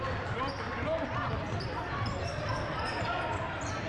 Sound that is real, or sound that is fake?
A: real